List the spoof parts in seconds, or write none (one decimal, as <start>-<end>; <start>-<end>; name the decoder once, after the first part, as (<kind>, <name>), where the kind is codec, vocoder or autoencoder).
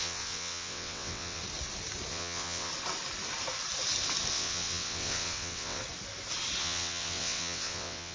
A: 0.0-1.4 (vocoder, WaveNeXt); 2.1-2.7; 4.3-5.8; 6.6-8.1